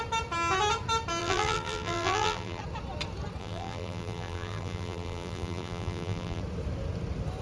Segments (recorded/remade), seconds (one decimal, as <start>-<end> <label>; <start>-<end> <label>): 0.0-1.2 recorded; 1.2-2.6 remade; 2.6-3.4 recorded; 3.4-6.4 remade; 6.4-7.4 recorded